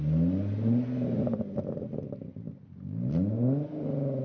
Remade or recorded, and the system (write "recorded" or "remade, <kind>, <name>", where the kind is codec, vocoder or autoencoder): recorded